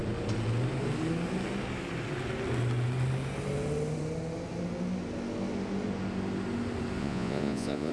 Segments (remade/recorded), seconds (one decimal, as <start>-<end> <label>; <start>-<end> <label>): 0.0-7.0 recorded; 7.0-7.9 remade